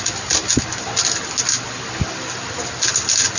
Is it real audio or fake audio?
real